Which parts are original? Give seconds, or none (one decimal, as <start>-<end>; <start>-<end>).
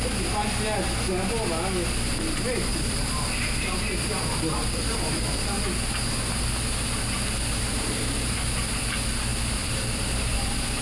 0.0-2.7; 5.2-9.3; 10.2-10.8